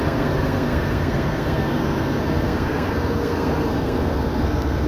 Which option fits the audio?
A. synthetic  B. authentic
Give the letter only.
A